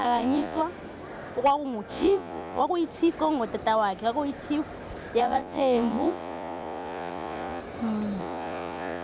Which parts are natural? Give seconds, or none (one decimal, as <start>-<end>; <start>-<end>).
0.6-1.9; 2.6-5.2; 7.6-8.2